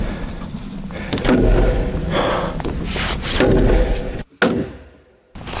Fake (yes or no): no